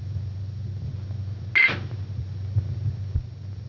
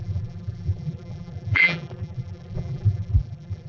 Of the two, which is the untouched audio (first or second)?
first